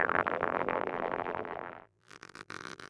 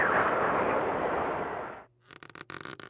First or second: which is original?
second